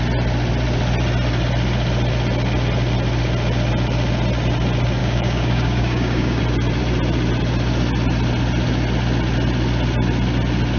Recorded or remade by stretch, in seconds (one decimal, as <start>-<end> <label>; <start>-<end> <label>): 0.0-5.0 recorded; 5.0-6.4 remade; 6.4-10.8 recorded